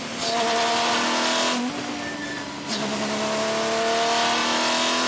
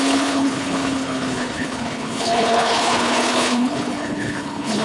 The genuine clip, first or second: first